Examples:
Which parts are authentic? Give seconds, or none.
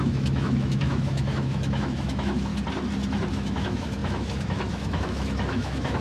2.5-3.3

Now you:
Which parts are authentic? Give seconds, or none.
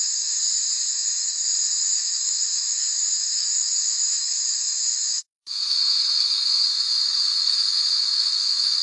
0.4-0.9